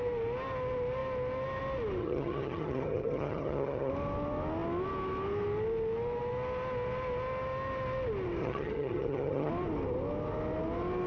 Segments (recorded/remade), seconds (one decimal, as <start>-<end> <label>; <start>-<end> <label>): 0.0-2.0 recorded; 2.0-3.9 remade; 3.9-8.4 recorded; 8.4-9.5 remade; 9.5-11.1 recorded

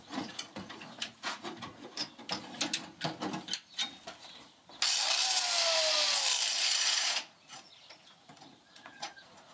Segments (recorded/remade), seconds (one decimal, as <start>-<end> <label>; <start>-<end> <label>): 0.0-2.0 remade; 2.0-6.5 recorded; 6.5-9.5 remade

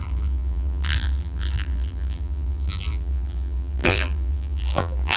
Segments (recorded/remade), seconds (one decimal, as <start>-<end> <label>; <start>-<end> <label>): 0.0-5.2 remade

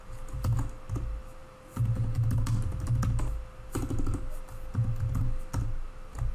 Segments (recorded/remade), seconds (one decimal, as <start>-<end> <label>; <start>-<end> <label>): 0.0-6.3 recorded

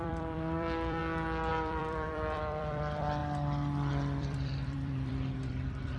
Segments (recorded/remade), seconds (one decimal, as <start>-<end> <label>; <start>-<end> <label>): 0.0-1.0 remade; 1.0-1.5 recorded; 1.5-3.2 remade; 3.2-3.9 recorded; 3.9-6.0 remade